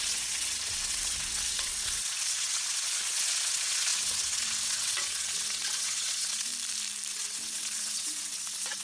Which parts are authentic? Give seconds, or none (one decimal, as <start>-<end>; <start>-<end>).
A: 6.5-7.1